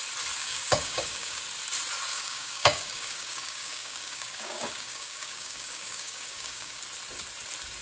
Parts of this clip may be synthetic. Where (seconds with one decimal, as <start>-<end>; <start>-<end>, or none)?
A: 0.4-1.4; 2.1-6.8